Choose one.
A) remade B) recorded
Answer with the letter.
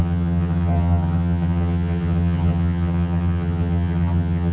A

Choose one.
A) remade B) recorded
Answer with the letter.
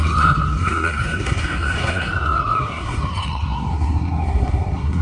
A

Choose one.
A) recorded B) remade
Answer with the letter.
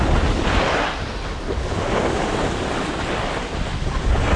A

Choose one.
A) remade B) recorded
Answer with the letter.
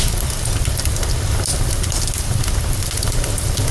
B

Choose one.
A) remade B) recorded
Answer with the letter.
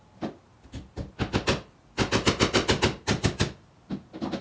B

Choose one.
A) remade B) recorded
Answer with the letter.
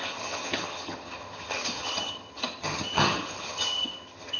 A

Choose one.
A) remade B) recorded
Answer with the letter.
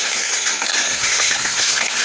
A